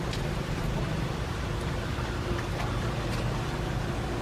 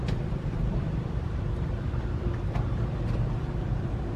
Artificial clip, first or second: second